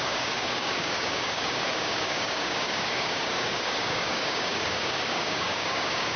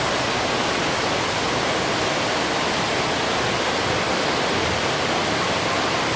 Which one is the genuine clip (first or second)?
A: second